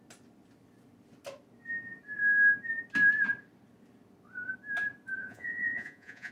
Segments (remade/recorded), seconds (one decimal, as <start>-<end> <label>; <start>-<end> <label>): 0.0-5.2 recorded; 5.2-6.3 remade